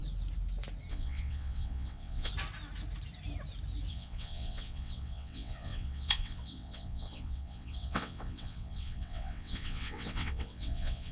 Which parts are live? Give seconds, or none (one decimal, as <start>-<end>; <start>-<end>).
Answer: 0.0-0.9; 2.3-3.9